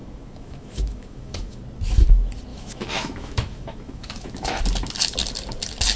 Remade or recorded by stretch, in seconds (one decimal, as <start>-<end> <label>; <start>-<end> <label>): 0.0-1.6 remade; 1.6-2.5 recorded; 2.5-4.6 remade; 4.6-6.0 recorded